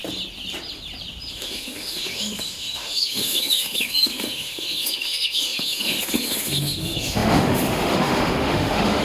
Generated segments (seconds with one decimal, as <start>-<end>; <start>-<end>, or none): 1.3-9.0